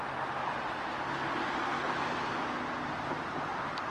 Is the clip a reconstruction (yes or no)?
no